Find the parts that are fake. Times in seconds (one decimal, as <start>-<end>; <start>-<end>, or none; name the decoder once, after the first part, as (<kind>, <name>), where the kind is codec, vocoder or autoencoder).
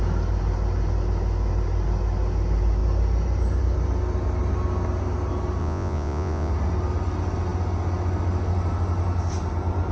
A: 5.6-6.5 (vocoder, Vocos)